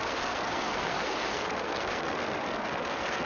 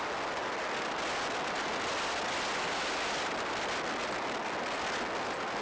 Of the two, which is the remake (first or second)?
first